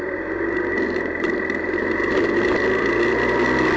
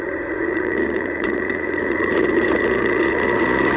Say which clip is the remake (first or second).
second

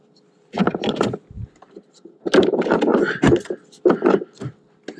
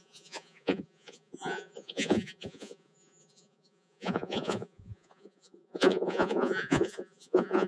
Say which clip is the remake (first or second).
second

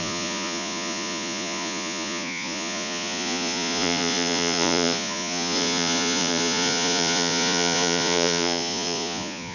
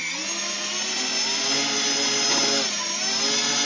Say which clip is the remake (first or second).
first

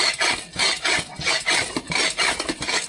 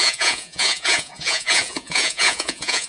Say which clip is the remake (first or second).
second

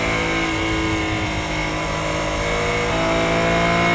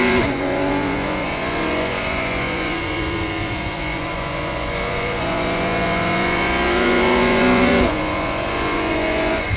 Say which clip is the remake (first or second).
second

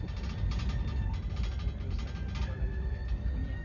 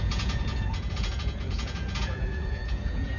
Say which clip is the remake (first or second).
second